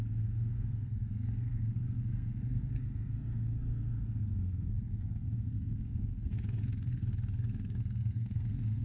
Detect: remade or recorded remade